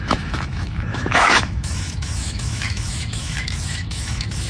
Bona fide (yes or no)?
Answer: no